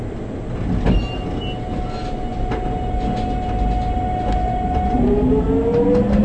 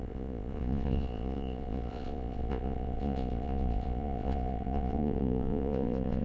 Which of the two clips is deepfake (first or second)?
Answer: second